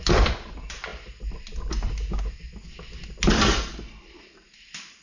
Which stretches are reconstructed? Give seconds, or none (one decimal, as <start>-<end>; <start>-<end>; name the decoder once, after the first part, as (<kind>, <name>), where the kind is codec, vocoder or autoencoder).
0.0-0.9 (vocoder, BigVGAN v2); 3.7-5.0